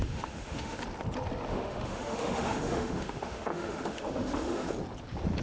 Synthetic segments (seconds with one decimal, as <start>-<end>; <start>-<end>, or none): 0.0-0.8; 1.5-4.7